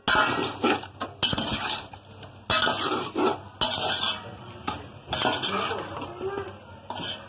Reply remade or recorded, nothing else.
recorded